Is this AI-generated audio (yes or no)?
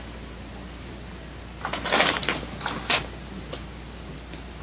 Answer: no